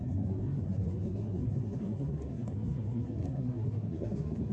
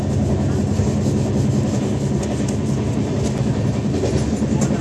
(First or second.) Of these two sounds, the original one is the second